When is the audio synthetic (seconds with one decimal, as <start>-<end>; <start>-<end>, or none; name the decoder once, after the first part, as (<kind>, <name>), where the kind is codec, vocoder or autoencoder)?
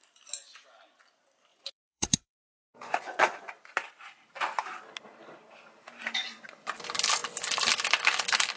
1.5-3.5 (vocoder, Vocos)